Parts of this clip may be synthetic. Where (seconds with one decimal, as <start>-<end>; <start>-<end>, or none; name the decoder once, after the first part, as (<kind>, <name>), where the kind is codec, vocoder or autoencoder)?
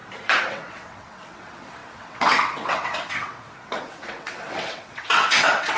0.5-5.8 (vocoder, WaveNeXt)